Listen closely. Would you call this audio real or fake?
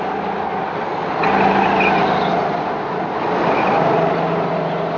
real